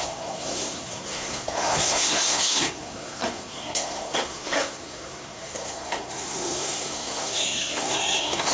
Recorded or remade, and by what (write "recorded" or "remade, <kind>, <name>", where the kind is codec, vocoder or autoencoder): remade, codec, SNAC